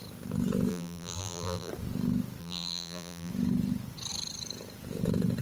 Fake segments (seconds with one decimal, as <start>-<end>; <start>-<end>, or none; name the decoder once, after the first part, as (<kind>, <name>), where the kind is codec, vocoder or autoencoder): 0.7-1.7 (vocoder, BigVGAN v2); 2.4-3.3